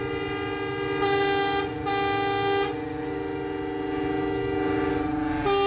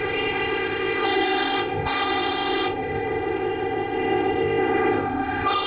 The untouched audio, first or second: first